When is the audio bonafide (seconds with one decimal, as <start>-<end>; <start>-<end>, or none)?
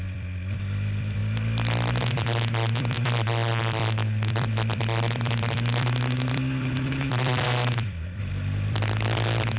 none